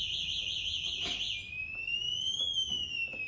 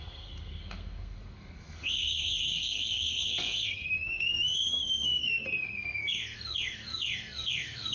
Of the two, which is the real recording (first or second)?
first